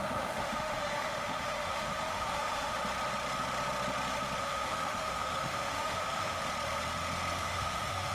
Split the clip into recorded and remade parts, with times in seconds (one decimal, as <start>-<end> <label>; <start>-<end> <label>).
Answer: 0.0-2.8 remade; 2.8-4.4 recorded; 4.4-6.4 remade; 6.4-7.4 recorded; 7.4-8.1 remade